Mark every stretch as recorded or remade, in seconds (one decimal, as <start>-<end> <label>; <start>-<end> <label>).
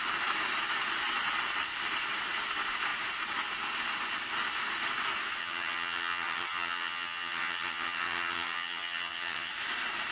0.0-5.4 recorded; 5.4-9.5 remade; 9.5-10.1 recorded